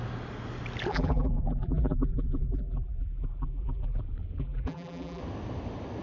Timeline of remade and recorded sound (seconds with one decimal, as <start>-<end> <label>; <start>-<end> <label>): 0.0-0.9 recorded; 0.9-4.0 remade; 4.0-4.4 recorded; 4.4-5.2 remade; 5.2-6.0 recorded